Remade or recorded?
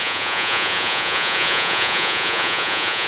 remade